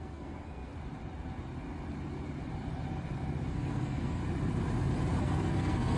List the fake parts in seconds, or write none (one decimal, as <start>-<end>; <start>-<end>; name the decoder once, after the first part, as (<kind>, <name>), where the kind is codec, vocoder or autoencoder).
0.0-0.7 (codec, SNAC); 3.5-4.2; 5.2-6.0